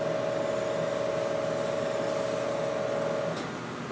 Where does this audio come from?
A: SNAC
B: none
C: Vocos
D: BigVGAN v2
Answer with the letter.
B